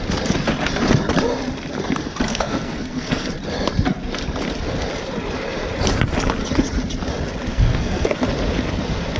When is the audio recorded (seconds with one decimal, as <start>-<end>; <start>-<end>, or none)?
0.0-2.3; 3.3-7.5; 8.1-9.2